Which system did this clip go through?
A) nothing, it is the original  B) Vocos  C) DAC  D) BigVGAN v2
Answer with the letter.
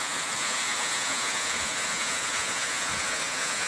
B